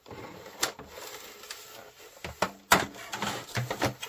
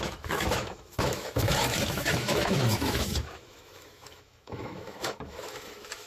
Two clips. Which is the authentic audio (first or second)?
first